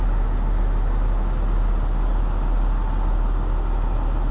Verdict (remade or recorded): recorded